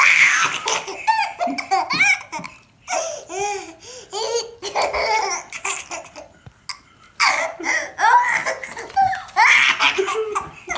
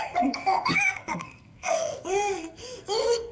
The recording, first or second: first